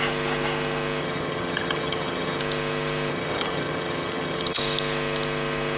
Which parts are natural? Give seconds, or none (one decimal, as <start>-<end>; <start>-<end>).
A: 0.0-1.0; 2.4-3.1; 4.6-5.8